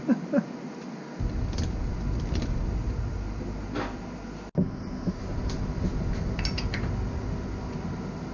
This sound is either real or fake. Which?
real